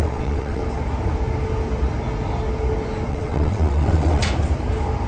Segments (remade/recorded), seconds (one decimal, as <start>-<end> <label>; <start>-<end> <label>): 0.0-0.6 remade; 0.6-3.1 recorded; 3.1-4.2 remade; 4.2-5.1 recorded